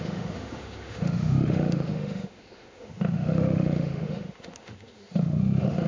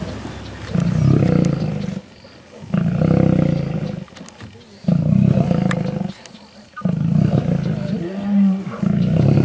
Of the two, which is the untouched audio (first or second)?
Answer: second